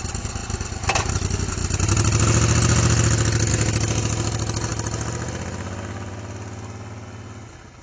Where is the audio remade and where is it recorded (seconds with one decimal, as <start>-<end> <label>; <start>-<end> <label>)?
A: 0.0-7.8 recorded